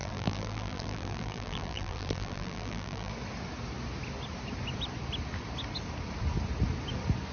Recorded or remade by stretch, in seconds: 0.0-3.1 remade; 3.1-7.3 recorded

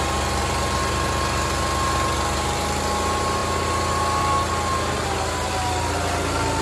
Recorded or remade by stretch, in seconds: 0.0-6.6 recorded

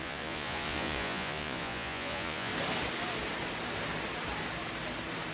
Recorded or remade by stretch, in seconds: 0.0-2.5 remade; 2.5-5.3 recorded

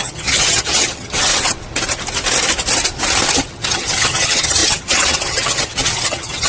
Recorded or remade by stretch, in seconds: 0.0-1.3 remade; 1.3-3.3 recorded; 3.3-6.5 remade

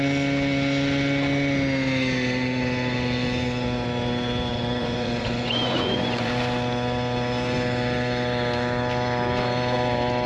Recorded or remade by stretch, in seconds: 0.0-4.5 recorded; 4.5-6.3 remade; 6.3-10.3 recorded

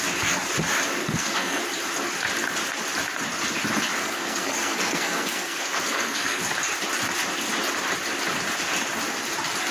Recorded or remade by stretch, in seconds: 0.0-1.0 recorded; 1.0-1.6 remade; 1.6-4.0 recorded; 4.0-6.4 remade; 6.4-9.7 recorded

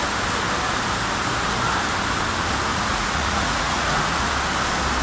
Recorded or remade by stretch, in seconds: 0.0-2.7 recorded; 2.7-4.3 remade; 4.3-5.0 recorded

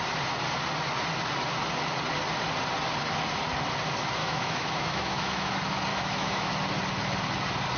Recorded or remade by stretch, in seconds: 0.0-4.2 recorded; 4.2-5.5 remade; 5.5-5.9 recorded; 5.9-6.5 remade; 6.5-7.8 recorded